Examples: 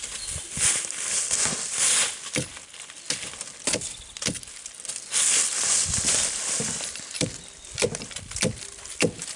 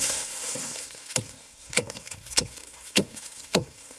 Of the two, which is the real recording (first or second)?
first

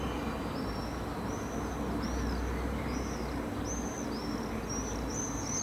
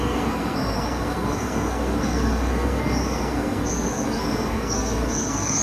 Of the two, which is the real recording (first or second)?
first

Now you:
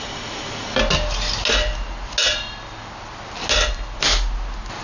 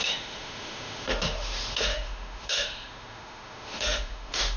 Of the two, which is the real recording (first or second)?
first